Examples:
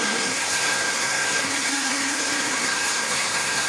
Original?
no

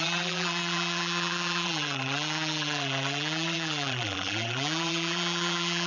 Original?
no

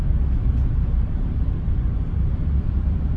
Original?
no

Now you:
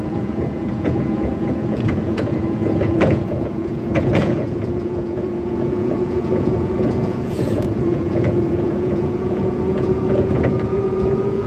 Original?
no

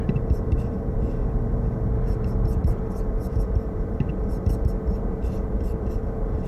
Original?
no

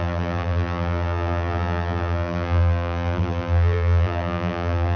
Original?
no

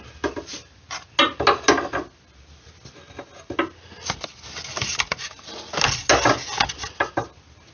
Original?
yes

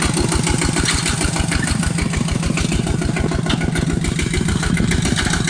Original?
yes